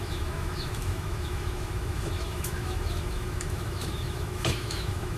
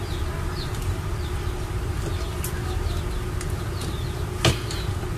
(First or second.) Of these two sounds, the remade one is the first